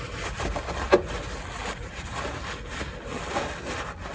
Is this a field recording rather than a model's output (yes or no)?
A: yes